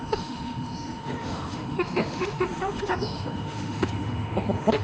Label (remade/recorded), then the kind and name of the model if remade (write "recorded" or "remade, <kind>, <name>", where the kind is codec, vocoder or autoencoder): remade, autoencoder, DAC-VAE